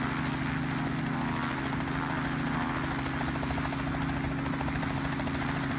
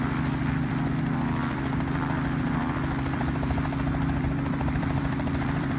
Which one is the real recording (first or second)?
first